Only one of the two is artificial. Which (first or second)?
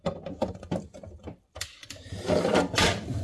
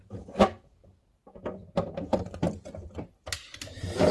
first